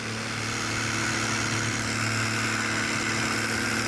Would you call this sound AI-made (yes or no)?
no